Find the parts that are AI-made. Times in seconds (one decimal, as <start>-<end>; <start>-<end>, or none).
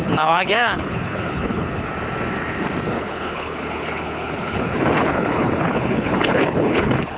0.0-1.9; 2.9-7.2